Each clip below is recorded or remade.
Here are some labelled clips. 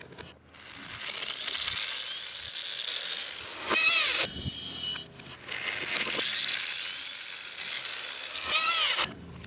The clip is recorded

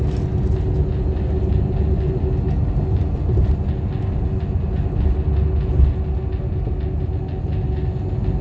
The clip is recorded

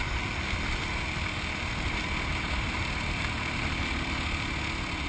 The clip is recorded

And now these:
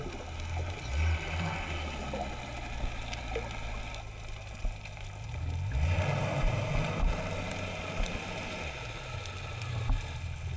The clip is recorded